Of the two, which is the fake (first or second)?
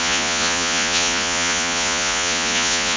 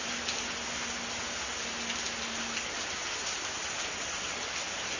first